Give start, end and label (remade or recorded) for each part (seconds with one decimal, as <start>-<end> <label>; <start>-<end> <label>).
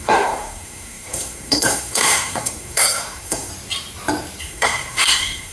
0.0-3.5 remade; 3.5-4.4 recorded; 4.4-5.5 remade